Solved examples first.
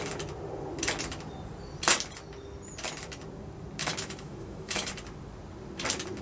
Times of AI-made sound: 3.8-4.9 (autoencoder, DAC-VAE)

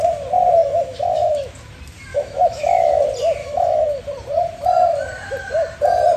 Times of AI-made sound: 0.6-1.5 (autoencoder, DAC-VAE); 2.1-3.0; 3.4-4.0

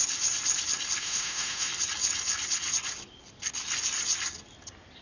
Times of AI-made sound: 1.0-1.7 (autoencoder, DAC-VAE)

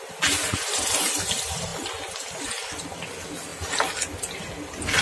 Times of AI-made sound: none